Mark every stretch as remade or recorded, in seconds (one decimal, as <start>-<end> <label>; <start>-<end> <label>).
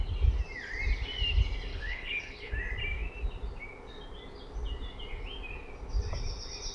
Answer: 0.0-1.7 recorded; 1.7-2.5 remade; 2.5-6.7 recorded